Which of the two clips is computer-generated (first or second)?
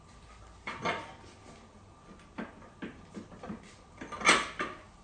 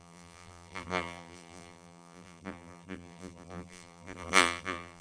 second